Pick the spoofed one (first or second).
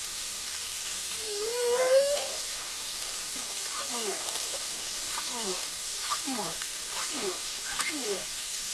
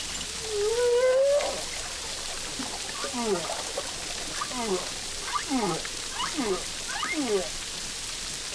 first